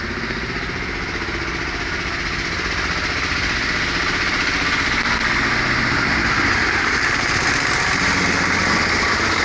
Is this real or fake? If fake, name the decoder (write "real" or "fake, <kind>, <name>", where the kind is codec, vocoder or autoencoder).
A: real